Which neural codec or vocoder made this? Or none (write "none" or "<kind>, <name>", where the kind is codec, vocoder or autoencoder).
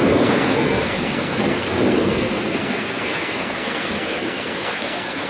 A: codec, SNAC